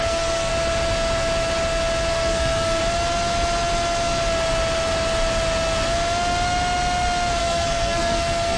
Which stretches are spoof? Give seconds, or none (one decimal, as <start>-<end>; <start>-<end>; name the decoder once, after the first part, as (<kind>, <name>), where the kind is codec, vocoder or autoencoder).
0.0-0.5 (codec, SNAC); 2.1-2.8; 7.4-8.6